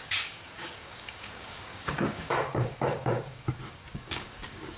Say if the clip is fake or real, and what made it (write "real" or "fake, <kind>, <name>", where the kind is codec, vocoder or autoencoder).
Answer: fake, codec, DAC